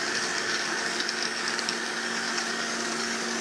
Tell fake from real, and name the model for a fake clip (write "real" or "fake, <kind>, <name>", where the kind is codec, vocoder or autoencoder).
fake, codec, DAC